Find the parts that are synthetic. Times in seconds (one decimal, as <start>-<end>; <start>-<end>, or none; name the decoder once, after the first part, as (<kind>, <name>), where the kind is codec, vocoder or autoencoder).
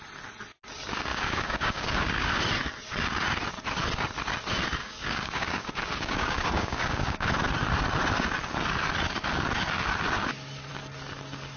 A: 1.1-2.4 (codec, DAC); 4.8-7.3